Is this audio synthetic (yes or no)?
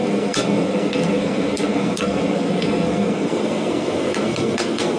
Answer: yes